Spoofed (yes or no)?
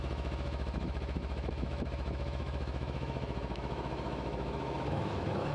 yes